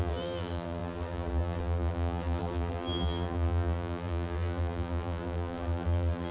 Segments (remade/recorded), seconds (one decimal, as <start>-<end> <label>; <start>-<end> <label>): 0.0-6.3 remade